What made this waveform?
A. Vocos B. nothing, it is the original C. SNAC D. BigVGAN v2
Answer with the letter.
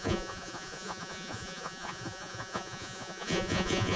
A